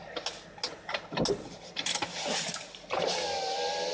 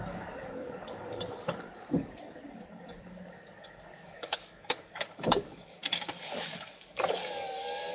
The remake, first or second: second